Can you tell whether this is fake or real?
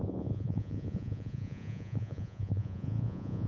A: fake